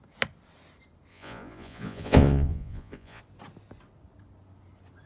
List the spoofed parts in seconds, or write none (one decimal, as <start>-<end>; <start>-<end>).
1.1-3.2